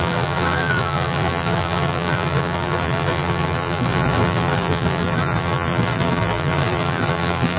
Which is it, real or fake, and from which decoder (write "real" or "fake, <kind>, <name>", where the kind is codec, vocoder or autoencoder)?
fake, vocoder, BigVGAN v2